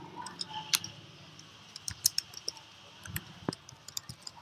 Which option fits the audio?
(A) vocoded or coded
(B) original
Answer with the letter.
A